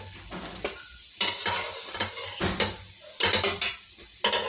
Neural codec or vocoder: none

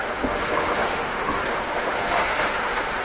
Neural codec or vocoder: autoencoder, DAC-VAE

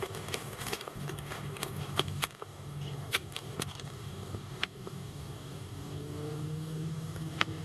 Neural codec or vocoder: codec, DAC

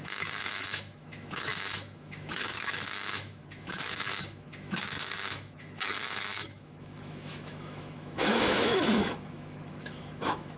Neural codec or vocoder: autoencoder, DAC-VAE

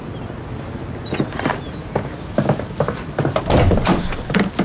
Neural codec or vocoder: none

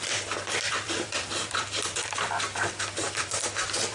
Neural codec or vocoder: vocoder, BigVGAN v2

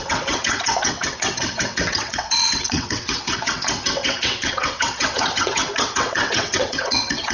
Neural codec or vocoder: vocoder, WaveNeXt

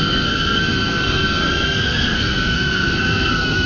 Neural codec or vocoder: codec, SNAC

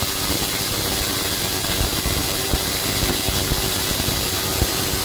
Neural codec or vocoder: vocoder, BigVGAN v2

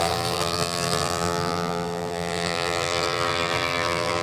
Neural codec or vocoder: vocoder, BigVGAN v2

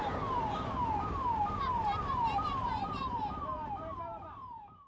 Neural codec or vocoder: vocoder, BigVGAN v2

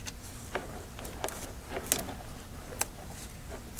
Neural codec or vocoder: none